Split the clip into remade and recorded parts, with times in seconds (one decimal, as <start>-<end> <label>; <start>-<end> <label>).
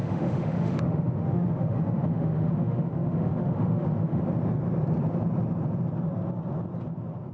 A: 0.0-4.2 remade; 4.2-7.3 recorded